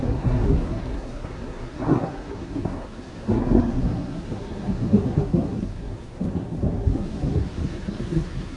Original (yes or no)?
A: no